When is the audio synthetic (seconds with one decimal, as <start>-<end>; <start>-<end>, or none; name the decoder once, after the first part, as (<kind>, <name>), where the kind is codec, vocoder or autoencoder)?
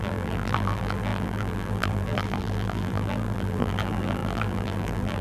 0.0-5.2 (vocoder, BigVGAN v2)